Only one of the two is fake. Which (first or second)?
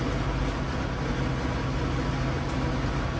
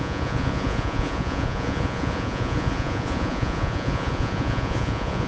second